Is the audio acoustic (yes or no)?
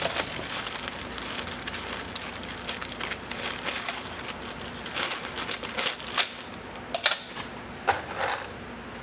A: yes